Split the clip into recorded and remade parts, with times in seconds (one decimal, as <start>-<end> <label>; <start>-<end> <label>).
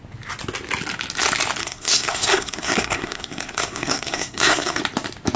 0.0-1.6 recorded; 1.6-4.8 remade; 4.8-5.4 recorded